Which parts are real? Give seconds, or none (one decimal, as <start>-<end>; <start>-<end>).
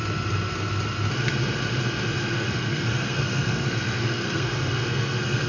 0.0-2.2